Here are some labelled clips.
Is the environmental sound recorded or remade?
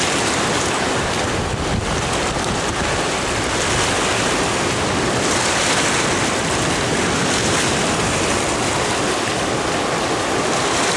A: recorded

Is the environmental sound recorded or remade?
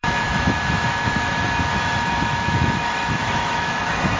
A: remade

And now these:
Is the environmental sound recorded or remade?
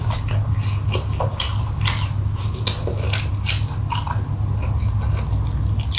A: recorded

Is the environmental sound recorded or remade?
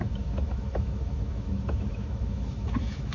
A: remade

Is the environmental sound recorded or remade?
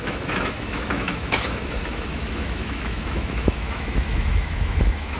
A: remade